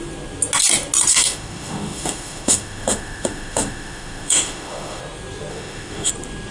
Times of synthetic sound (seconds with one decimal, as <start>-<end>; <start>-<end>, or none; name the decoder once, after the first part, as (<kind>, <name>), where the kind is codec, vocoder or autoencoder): 1.1-5.0 (autoencoder, DAC-VAE); 5.5-6.1